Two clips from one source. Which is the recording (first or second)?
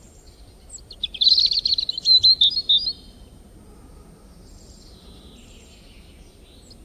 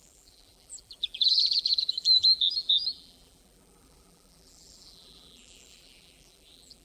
first